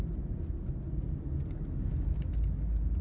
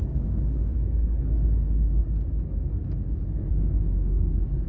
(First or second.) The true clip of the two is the first